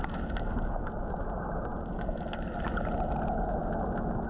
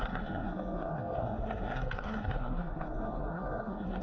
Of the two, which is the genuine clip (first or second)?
first